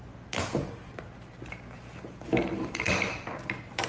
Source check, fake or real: real